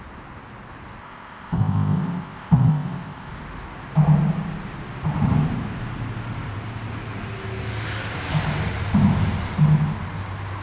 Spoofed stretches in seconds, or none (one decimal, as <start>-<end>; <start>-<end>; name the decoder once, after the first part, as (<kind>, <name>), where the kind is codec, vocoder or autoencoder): 1.0-3.3 (codec, ZipCodec)